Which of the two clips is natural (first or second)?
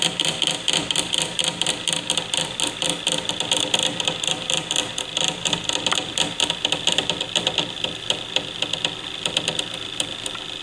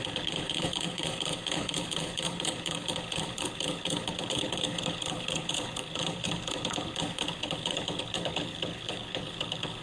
first